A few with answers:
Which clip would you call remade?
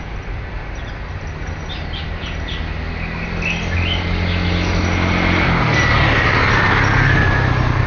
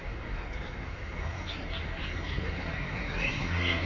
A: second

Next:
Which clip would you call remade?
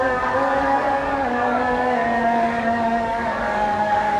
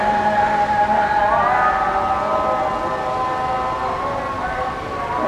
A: first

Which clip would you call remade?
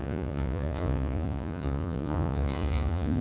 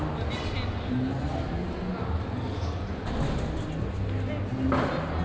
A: first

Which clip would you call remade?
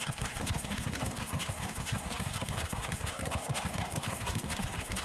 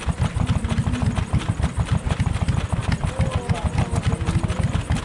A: first